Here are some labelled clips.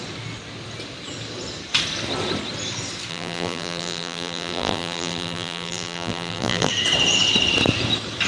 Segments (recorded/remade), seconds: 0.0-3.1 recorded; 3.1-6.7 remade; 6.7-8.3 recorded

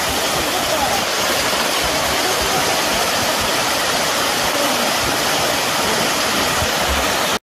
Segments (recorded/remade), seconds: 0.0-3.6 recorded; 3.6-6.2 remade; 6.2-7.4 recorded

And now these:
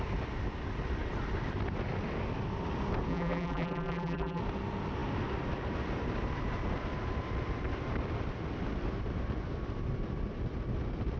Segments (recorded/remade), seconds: 0.0-3.1 recorded; 3.1-4.4 remade; 4.4-11.2 recorded

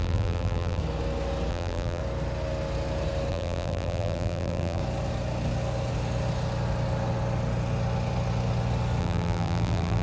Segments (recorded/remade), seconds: 0.0-0.8 remade; 0.8-1.5 recorded; 1.5-2.0 remade; 2.0-3.3 recorded; 3.3-4.8 remade; 4.8-9.0 recorded; 9.0-10.0 remade

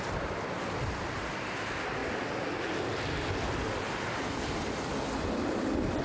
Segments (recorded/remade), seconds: 0.0-2.0 remade; 2.0-3.6 recorded; 3.6-6.0 remade